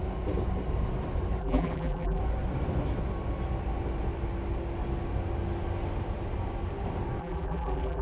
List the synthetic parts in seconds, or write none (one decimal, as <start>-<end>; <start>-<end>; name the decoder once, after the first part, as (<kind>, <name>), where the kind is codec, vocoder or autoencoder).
1.4-2.2 (vocoder, BigVGAN v2); 7.2-8.0